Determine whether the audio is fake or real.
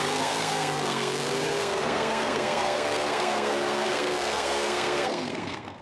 fake